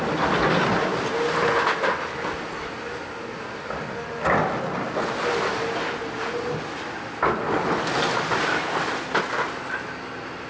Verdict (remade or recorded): recorded